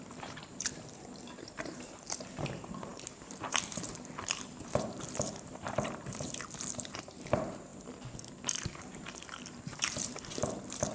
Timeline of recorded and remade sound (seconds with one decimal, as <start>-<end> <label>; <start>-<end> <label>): 0.0-7.7 remade; 7.7-8.3 recorded; 8.3-10.9 remade